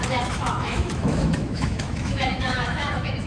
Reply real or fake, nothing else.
fake